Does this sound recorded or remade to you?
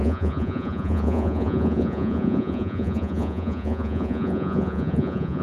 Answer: remade